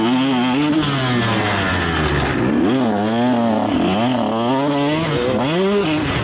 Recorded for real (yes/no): yes